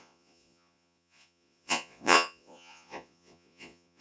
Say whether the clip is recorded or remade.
remade